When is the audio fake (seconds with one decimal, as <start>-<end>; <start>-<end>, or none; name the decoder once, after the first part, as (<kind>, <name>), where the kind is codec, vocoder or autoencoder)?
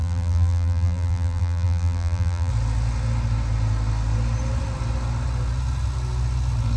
0.0-2.5 (vocoder, BigVGAN v2)